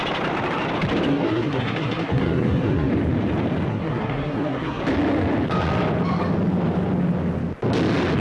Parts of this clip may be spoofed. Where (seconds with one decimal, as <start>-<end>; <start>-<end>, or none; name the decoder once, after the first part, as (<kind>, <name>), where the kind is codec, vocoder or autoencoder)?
1.1-2.9 (codec, SNAC); 3.7-4.8